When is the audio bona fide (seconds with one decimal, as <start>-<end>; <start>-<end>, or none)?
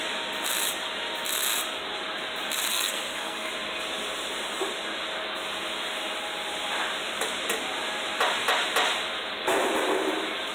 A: 0.0-2.7; 3.5-10.5